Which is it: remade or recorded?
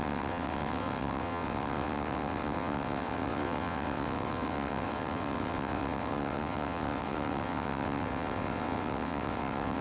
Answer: remade